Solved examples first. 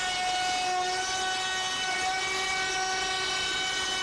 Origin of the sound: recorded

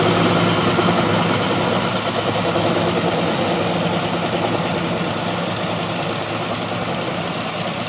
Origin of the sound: recorded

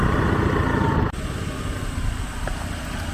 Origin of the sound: recorded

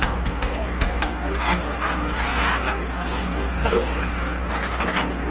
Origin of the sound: remade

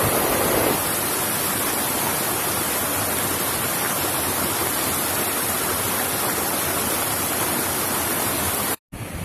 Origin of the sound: recorded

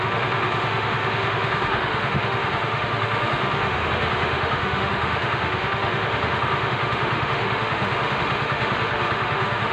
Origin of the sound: remade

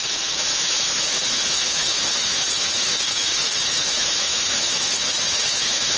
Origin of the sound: remade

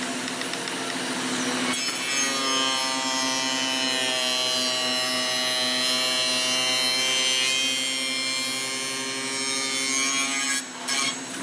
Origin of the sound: recorded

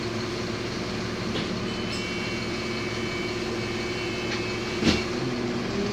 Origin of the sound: recorded